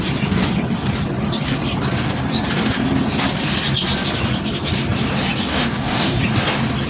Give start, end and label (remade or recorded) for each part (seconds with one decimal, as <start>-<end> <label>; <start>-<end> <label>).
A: 0.0-5.5 recorded; 5.5-6.2 remade; 6.2-6.9 recorded